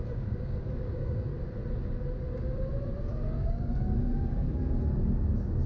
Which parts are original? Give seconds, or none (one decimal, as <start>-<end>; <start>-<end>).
1.3-2.9; 4.6-5.3